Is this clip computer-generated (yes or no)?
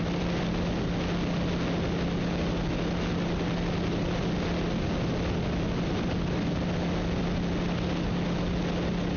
no